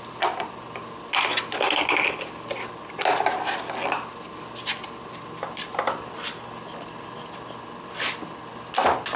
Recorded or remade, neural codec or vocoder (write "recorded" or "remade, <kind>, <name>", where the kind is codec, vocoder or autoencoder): recorded